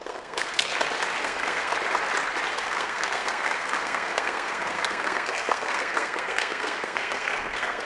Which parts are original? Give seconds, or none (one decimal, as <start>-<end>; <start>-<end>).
0.7-1.2; 1.7-2.5